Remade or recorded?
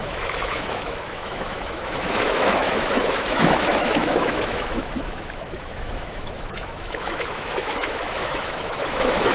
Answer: remade